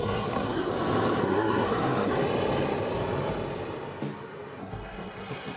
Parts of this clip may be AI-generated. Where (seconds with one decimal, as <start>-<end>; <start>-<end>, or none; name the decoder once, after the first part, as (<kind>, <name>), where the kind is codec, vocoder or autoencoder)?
0.0-0.7 (codec, SNAC); 1.2-2.1; 4.6-5.6